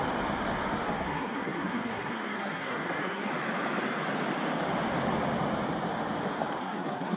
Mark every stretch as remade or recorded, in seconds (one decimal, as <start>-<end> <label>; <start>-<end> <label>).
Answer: 0.0-1.0 recorded; 1.0-3.3 remade; 3.3-6.6 recorded; 6.6-7.2 remade